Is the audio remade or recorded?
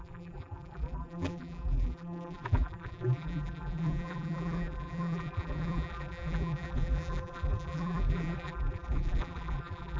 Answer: remade